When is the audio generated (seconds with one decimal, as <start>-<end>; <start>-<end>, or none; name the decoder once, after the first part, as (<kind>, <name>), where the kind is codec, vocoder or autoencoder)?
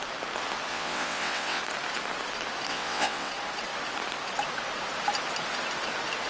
0.7-1.6 (vocoder, WaveNeXt); 2.7-3.3